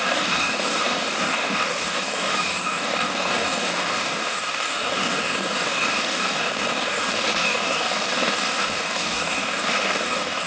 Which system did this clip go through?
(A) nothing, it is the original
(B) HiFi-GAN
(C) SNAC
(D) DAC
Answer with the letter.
D